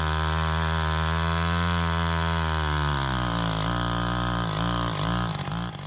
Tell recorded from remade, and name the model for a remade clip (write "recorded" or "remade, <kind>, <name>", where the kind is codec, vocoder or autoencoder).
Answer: recorded